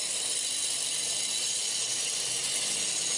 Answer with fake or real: real